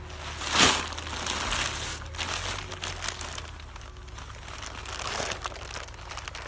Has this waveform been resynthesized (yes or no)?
no